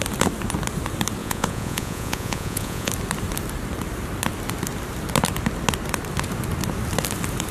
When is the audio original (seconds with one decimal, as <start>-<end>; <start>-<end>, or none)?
0.0-1.2; 2.9-7.5